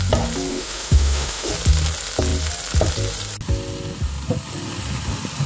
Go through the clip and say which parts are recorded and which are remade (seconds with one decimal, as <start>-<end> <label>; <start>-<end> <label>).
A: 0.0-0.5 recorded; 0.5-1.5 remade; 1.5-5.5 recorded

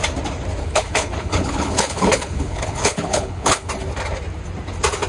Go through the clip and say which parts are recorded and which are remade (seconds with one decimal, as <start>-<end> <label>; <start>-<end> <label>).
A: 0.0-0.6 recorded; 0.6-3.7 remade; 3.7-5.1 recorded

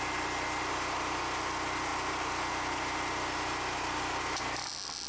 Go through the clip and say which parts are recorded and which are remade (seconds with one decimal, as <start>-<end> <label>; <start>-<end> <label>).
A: 0.0-5.1 recorded

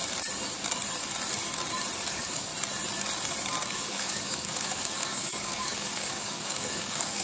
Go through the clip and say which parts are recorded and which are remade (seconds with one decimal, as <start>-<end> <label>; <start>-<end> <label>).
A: 0.0-2.0 recorded; 2.0-2.5 remade; 2.5-3.7 recorded; 3.7-7.2 remade

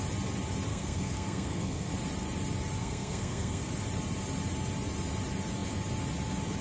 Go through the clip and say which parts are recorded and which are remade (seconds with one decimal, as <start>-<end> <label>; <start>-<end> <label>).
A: 0.0-0.7 recorded; 0.7-1.9 remade; 1.9-2.8 recorded; 2.8-3.7 remade; 3.7-6.6 recorded